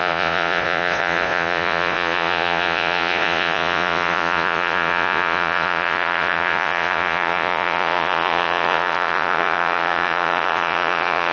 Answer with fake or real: fake